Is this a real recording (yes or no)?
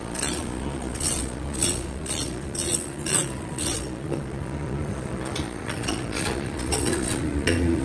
no